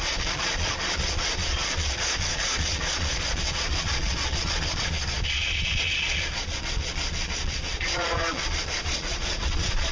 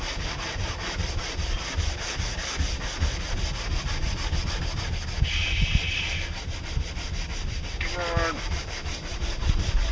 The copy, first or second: first